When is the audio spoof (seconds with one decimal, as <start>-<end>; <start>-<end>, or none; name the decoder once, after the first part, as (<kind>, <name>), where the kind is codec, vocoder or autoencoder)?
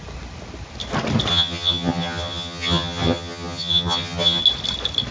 1.3-4.4 (vocoder, HiFi-GAN)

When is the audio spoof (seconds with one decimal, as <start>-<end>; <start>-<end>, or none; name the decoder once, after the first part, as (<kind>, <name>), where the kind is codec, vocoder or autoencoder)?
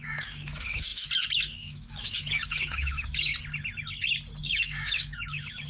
0.0-3.3 (autoencoder, DAC-VAE); 4.4-5.7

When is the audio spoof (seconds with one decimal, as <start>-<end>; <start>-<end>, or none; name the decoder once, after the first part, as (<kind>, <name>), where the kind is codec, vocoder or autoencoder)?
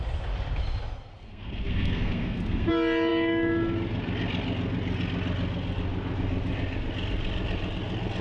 1.1-2.7 (codec, SNAC)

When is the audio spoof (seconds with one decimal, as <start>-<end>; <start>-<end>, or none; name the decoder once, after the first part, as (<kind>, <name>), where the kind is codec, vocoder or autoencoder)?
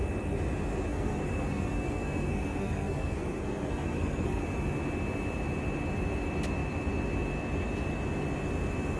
0.9-4.4 (codec, SNAC)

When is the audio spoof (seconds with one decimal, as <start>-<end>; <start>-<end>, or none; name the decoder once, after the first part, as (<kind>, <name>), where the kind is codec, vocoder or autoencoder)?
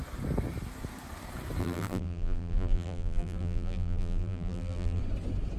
1.6-5.0 (vocoder, BigVGAN v2)